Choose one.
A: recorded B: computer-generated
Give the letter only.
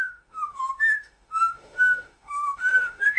B